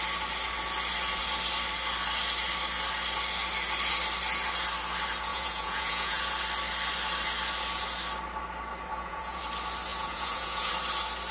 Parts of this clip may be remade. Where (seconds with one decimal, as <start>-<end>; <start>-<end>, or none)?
5.3-6.2; 8.9-9.4; 9.9-10.7